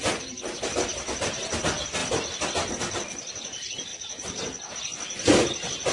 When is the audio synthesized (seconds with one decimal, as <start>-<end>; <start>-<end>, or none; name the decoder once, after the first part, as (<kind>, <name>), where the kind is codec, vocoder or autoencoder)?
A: none